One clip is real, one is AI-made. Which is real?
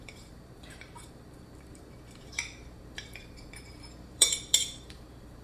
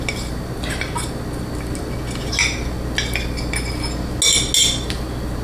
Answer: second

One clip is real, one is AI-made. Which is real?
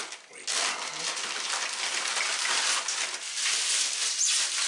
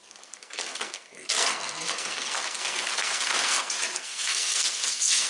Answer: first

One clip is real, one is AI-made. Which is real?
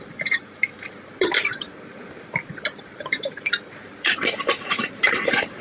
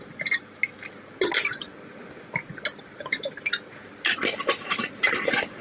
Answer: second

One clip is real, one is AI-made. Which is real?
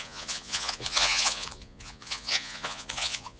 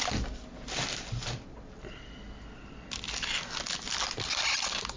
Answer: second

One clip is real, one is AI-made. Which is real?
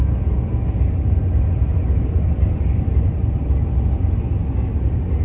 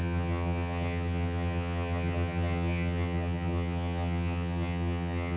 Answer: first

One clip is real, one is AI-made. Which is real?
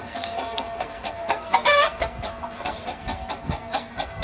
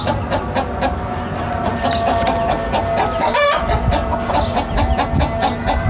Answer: second